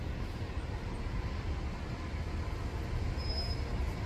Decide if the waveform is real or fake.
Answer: real